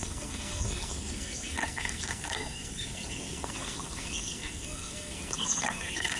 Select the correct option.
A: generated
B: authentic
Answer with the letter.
A